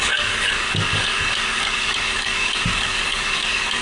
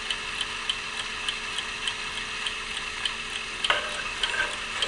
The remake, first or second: first